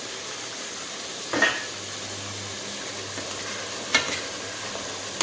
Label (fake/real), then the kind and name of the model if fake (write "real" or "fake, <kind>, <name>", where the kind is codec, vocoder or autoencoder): real